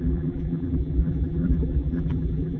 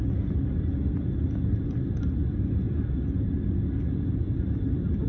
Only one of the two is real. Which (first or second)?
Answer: second